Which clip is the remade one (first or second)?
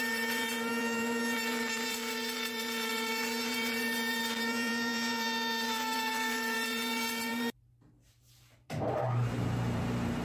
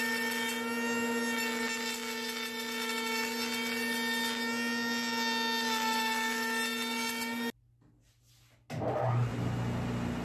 first